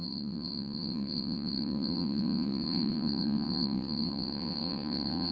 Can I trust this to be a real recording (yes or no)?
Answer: no